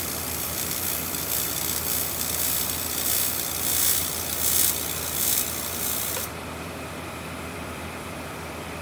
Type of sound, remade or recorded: remade